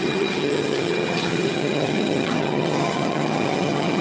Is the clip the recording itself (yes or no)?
no